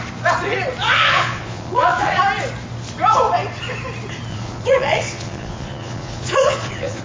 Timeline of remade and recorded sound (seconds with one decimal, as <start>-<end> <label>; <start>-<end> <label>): 0.0-0.8 recorded; 0.8-2.2 remade; 2.2-4.3 recorded; 4.3-7.0 remade